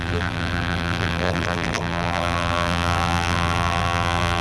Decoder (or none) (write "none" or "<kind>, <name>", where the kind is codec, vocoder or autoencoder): vocoder, BigVGAN v2